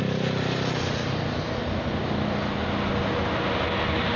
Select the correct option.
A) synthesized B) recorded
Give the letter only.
B